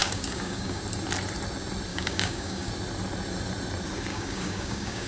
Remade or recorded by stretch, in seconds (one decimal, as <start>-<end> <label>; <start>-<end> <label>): 0.0-0.8 remade; 0.8-1.9 recorded; 1.9-2.7 remade; 2.7-4.1 recorded; 4.1-5.1 remade

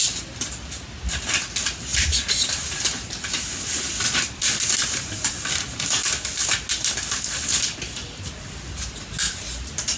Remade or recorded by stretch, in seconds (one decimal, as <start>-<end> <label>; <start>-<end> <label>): 0.0-10.0 recorded

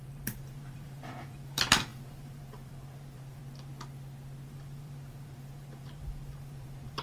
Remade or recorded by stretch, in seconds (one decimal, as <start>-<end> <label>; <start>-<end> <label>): 0.0-3.4 remade; 3.4-4.5 recorded; 4.5-7.0 remade

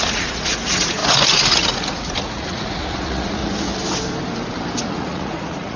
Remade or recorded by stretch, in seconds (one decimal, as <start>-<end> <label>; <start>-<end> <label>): 0.0-3.4 remade; 3.4-4.8 recorded; 4.8-5.8 remade

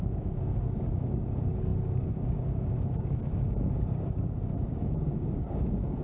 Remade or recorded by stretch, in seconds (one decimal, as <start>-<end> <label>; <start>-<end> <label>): 0.0-6.0 remade

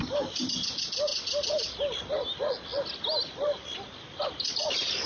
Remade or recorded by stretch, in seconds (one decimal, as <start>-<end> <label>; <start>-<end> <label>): 0.0-5.1 recorded

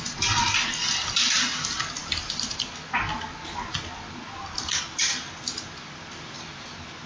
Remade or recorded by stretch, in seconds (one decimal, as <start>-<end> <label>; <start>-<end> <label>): 0.0-7.1 recorded

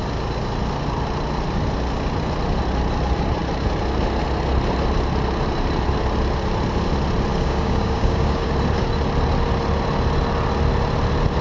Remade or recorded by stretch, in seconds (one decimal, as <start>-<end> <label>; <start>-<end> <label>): 0.0-7.3 recorded; 7.3-8.5 remade; 8.5-11.4 recorded